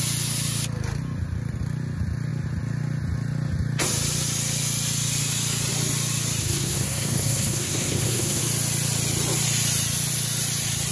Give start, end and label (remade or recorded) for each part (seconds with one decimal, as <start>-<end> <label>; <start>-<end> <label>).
0.0-6.4 recorded; 6.4-8.4 remade; 8.4-10.9 recorded